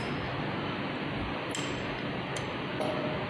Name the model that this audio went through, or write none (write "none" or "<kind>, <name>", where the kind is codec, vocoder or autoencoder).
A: none